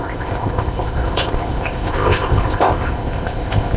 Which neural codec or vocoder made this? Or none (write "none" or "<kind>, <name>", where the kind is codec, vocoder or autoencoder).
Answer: codec, ZipCodec